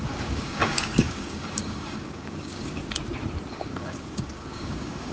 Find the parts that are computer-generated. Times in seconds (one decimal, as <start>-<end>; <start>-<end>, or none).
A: 0.0-2.8; 3.5-5.1